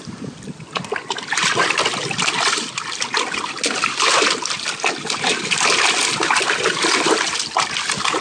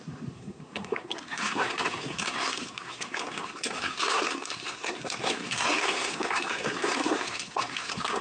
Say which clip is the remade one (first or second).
second